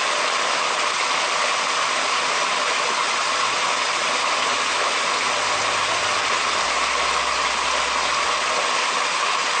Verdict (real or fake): real